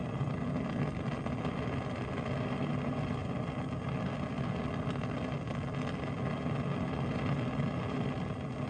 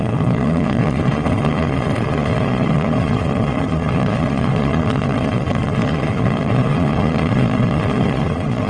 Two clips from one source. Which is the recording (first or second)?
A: first